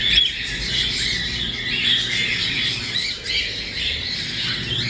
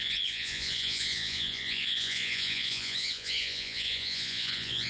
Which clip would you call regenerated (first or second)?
second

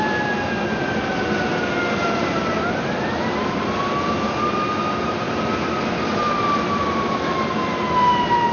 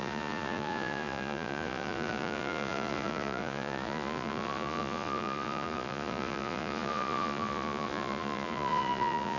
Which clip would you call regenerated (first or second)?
second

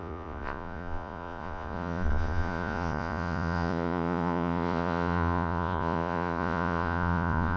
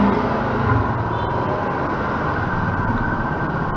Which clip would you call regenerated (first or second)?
first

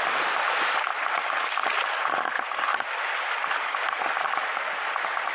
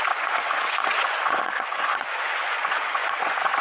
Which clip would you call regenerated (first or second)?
second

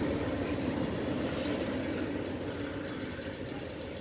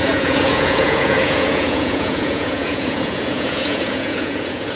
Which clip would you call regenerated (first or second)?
second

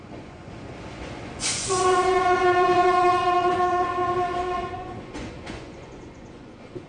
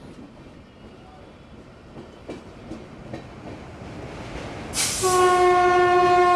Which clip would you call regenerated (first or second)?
first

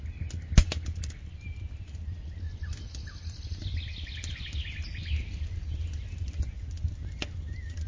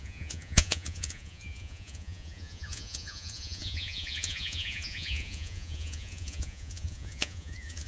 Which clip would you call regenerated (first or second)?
second